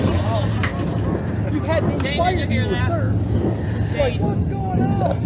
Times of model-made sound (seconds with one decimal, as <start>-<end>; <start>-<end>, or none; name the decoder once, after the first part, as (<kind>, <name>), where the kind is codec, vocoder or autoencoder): none